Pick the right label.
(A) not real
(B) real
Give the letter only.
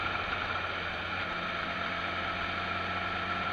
B